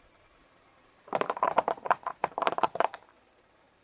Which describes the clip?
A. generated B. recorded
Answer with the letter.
A